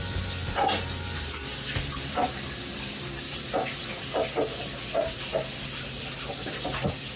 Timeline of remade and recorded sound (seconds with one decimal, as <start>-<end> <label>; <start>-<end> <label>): 0.0-0.4 recorded; 0.4-4.3 remade; 4.3-7.2 recorded